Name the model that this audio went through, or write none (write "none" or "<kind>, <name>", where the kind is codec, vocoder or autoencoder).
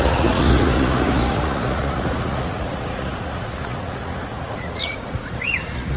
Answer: vocoder, Vocos